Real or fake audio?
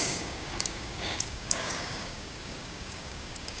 fake